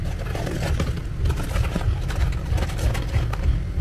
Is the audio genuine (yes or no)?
yes